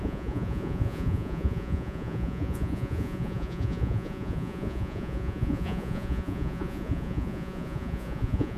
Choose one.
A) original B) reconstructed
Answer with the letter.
B